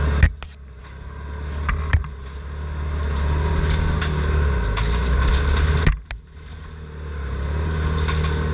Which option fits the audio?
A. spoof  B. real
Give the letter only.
B